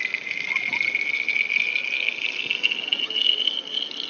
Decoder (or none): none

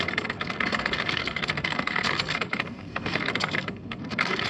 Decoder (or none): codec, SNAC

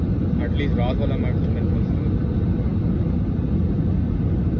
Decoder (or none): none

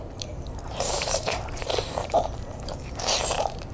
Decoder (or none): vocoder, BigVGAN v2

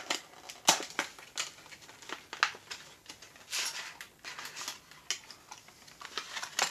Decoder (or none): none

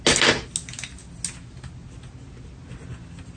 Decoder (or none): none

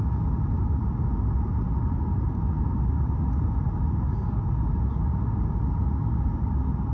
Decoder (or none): none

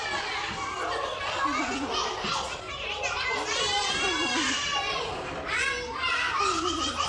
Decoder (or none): none